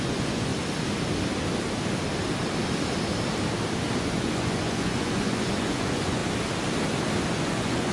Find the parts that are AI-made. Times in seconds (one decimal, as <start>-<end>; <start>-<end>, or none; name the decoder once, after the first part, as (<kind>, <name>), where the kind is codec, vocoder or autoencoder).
0.0-0.5 (vocoder, Vocos); 4.0-6.2; 7.3-7.9